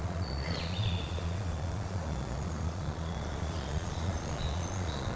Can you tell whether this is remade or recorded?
remade